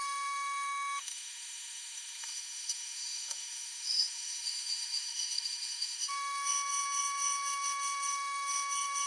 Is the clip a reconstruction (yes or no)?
yes